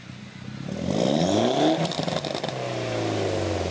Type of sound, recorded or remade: recorded